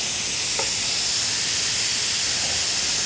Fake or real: real